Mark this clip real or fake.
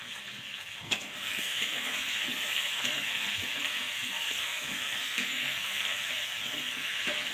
fake